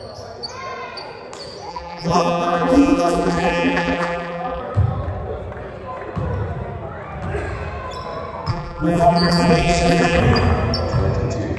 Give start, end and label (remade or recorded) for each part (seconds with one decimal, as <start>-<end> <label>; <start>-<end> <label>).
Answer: 0.0-1.7 recorded; 1.7-4.6 remade; 4.6-8.5 recorded; 8.5-10.2 remade; 10.2-11.6 recorded